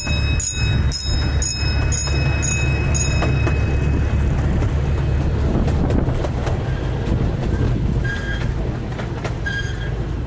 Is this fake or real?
real